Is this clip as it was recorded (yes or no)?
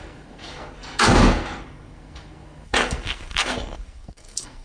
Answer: no